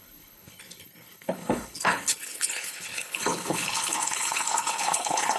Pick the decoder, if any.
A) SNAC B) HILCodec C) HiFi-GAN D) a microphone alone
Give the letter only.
B